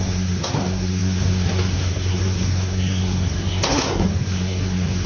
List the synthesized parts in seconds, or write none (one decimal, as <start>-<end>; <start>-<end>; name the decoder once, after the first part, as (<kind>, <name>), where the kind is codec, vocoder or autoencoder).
0.0-5.1 (codec, SNAC)